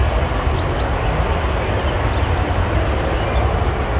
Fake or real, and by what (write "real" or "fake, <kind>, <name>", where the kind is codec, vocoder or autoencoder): real